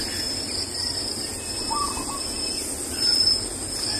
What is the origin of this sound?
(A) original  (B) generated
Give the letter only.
A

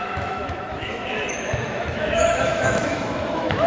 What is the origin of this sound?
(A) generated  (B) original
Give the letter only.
A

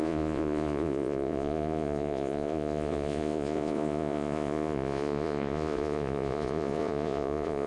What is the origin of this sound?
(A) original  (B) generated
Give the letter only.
B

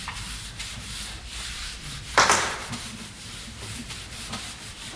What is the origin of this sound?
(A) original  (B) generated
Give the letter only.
B